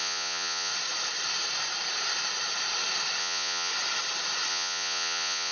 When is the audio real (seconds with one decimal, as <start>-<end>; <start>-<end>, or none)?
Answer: 0.7-3.2; 3.7-4.5